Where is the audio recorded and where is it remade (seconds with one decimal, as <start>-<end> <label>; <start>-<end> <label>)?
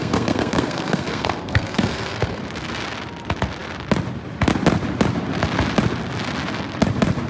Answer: 0.0-2.4 remade; 2.4-7.3 recorded